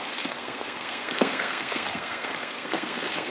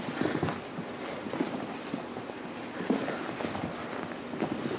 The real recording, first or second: second